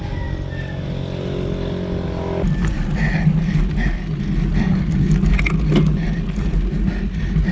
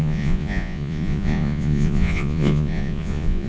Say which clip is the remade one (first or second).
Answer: second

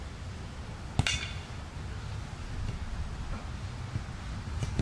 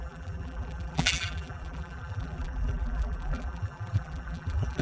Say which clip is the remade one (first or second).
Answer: second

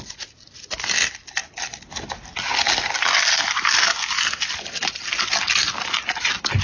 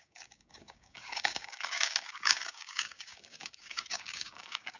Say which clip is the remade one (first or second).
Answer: second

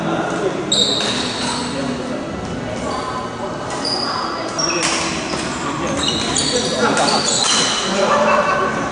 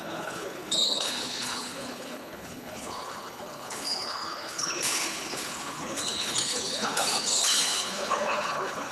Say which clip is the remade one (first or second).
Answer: second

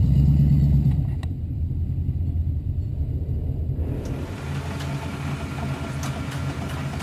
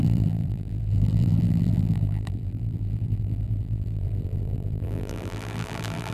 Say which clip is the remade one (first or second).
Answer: second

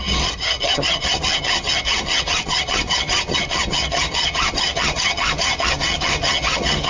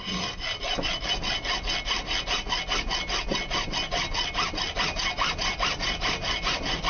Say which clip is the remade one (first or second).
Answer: first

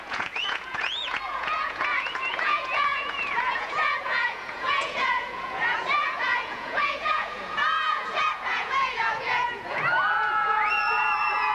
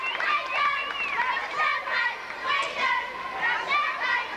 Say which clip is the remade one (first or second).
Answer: first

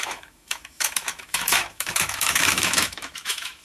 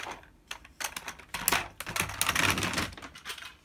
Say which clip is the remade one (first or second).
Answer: first